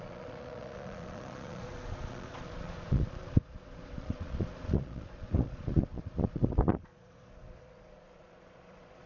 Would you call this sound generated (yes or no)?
yes